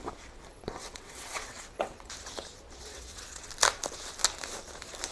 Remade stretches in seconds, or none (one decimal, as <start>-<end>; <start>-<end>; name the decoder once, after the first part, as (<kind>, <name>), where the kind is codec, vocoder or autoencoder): 0.5-2.1 (vocoder, WaveNeXt); 2.9-3.5